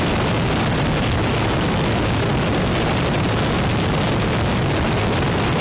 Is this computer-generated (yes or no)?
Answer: no